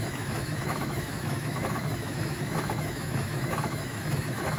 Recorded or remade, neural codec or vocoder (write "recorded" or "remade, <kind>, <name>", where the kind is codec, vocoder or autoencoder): remade, autoencoder, DAC-VAE